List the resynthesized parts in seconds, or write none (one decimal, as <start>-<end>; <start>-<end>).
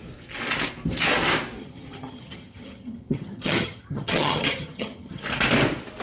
1.6-5.2